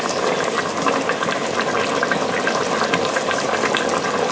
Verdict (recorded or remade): recorded